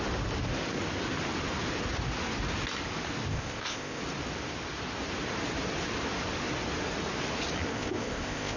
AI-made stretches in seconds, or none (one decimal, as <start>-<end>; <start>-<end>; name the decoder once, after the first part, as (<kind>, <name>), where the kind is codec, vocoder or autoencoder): 3.3-4.0 (codec, ZipCodec); 7.7-8.6

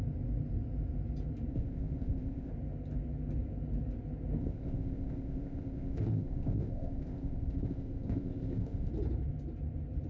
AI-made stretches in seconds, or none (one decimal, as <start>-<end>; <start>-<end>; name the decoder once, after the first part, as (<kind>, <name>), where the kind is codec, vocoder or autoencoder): 1.5-2.5 (codec, ZipCodec); 4.4-8.9

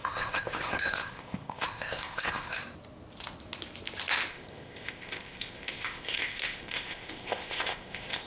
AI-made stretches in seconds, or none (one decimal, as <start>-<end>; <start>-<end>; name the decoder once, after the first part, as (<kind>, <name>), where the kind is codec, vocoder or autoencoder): 0.0-2.6 (codec, ZipCodec); 4.3-8.3

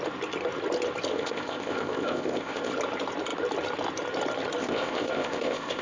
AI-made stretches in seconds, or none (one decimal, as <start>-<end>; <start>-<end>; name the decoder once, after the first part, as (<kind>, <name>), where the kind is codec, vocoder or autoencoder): 1.1-2.7 (codec, ZipCodec); 4.6-5.8

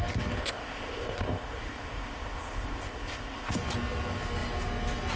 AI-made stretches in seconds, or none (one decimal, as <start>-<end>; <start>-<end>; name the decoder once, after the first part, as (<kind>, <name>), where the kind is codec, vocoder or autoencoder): 0.4-3.5 (codec, ZipCodec)

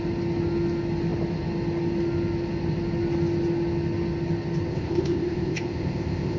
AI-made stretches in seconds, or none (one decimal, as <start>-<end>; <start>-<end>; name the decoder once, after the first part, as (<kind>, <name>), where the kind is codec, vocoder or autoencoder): 4.7-6.4 (codec, ZipCodec)

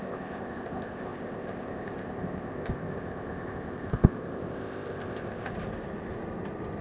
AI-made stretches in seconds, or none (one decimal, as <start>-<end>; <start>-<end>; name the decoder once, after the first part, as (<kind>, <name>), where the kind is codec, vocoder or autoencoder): 0.0-5.5 (codec, ZipCodec)